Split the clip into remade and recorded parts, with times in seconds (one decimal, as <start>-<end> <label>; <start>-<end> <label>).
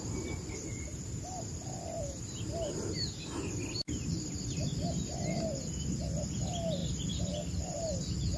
0.0-6.8 recorded; 6.8-7.7 remade; 7.7-8.4 recorded